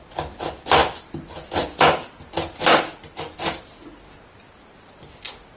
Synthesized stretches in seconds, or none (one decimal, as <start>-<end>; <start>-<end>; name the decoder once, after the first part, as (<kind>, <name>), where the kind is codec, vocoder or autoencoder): none